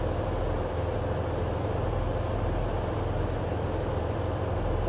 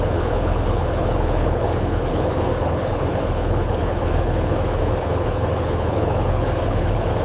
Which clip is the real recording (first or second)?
first